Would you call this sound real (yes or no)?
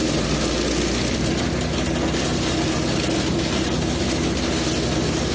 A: yes